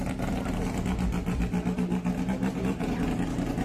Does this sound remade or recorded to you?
recorded